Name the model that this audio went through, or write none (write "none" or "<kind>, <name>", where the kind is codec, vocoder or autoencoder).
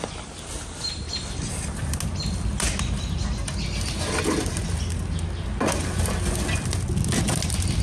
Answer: none